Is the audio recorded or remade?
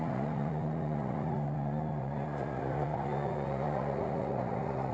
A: remade